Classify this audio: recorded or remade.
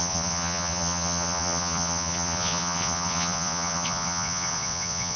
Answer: remade